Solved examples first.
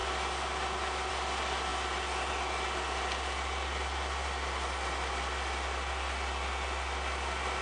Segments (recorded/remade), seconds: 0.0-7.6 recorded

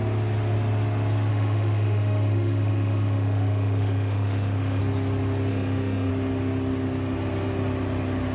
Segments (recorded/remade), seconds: 0.0-1.3 recorded; 1.3-4.8 remade; 4.8-5.5 recorded; 5.5-6.1 remade; 6.1-8.3 recorded

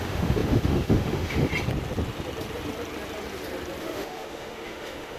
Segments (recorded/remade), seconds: 0.0-1.5 remade; 1.5-3.8 recorded; 3.8-5.2 remade

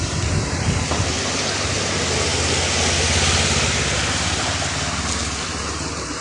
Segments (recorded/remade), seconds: 0.0-6.2 recorded

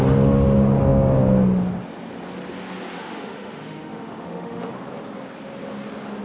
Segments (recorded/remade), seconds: 0.0-2.9 recorded; 2.9-4.7 remade; 4.7-6.2 recorded

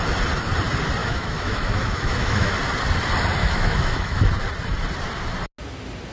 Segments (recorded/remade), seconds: 0.0-1.0 recorded; 1.0-2.5 remade; 2.5-3.4 recorded; 3.4-4.3 remade; 4.3-6.1 recorded